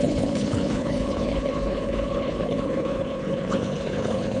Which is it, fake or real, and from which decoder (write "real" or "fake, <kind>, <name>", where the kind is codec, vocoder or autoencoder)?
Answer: fake, codec, HILCodec